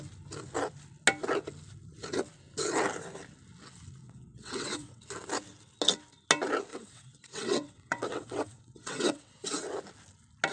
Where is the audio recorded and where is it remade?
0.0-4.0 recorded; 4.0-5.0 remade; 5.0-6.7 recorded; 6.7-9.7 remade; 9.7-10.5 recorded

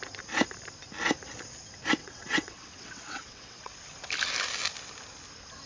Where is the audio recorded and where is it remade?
0.0-2.0 recorded; 2.0-3.7 remade; 3.7-5.7 recorded